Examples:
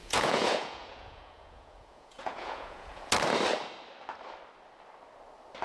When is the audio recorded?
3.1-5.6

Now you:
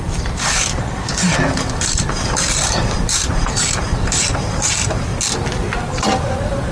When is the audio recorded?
5.1-5.8

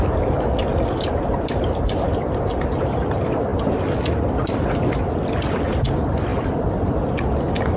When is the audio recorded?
0.0-7.8